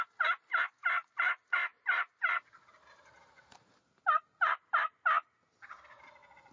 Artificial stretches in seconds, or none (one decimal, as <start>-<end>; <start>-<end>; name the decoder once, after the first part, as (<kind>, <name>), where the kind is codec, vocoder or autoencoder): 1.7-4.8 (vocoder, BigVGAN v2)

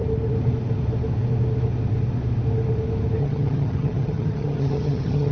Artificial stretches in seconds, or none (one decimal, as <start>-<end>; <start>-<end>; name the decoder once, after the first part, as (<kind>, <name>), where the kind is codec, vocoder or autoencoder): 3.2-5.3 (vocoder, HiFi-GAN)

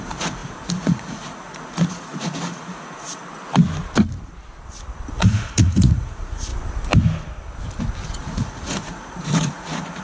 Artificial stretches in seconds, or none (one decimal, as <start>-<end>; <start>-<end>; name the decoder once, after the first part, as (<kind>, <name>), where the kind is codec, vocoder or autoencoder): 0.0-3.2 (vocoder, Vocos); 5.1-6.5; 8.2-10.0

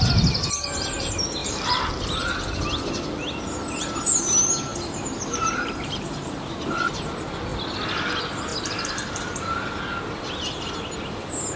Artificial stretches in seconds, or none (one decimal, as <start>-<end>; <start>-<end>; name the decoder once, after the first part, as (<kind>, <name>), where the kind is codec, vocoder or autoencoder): 1.4-1.9 (vocoder, BigVGAN v2); 4.7-6.8; 8.5-9.8

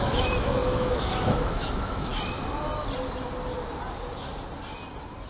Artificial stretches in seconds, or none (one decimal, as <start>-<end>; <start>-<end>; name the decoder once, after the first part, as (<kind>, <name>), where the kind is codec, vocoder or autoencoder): 0.0-2.1 (autoencoder, DAC-VAE)